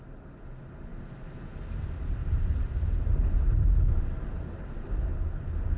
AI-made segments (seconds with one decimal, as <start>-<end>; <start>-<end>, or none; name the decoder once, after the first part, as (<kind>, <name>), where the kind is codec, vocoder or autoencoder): none